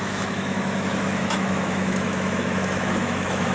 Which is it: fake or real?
fake